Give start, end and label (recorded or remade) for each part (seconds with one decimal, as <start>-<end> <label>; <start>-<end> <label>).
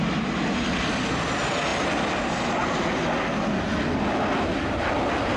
0.0-5.4 recorded